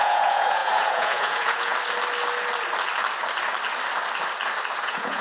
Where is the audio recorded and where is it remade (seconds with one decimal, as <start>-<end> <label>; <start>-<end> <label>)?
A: 0.0-1.7 remade; 1.7-4.8 recorded; 4.8-5.2 remade